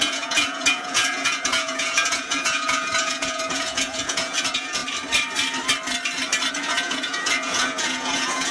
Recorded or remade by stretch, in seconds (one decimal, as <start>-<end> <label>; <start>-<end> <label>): 0.0-4.8 remade; 4.8-6.5 recorded; 6.5-8.5 remade